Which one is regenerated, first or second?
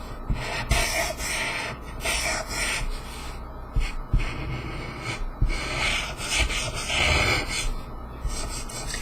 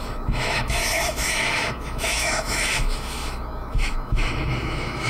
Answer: second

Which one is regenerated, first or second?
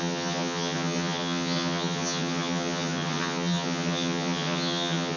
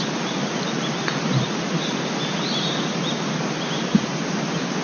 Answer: first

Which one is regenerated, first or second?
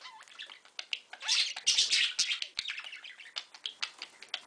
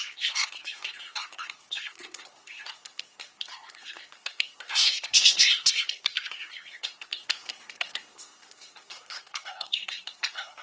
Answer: second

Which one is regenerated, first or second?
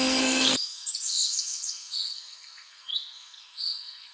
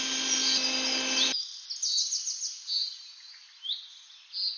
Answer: first